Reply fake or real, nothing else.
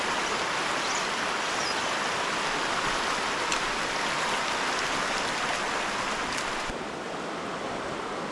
real